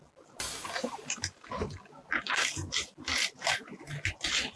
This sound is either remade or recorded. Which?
recorded